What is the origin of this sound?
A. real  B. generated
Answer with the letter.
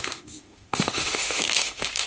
B